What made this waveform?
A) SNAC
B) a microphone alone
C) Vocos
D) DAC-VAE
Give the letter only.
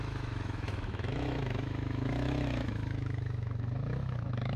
D